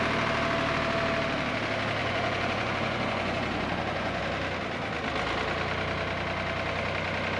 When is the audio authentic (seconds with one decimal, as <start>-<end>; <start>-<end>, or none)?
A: 0.0-2.0; 4.2-7.4